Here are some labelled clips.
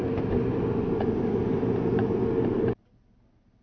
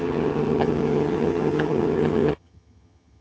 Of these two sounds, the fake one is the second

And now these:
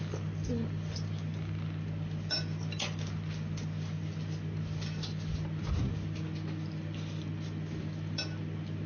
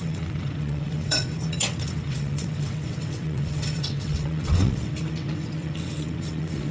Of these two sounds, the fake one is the second